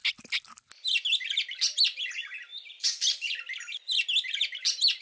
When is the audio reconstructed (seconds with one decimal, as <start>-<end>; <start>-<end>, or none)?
2.5-3.8